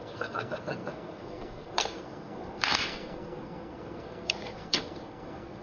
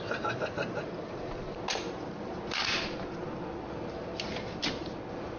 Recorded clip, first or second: second